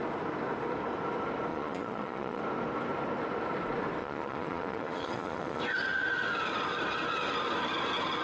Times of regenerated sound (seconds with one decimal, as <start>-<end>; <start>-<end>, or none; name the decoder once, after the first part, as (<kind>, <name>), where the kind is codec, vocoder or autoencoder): 1.5-2.4 (vocoder, Vocos); 4.0-5.6